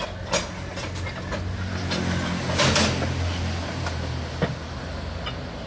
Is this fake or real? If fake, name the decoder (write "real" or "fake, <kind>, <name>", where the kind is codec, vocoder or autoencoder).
real